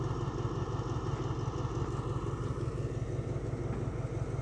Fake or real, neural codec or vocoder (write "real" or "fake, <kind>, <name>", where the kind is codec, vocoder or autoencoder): real